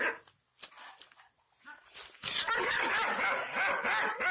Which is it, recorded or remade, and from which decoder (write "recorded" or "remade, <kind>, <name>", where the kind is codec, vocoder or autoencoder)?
recorded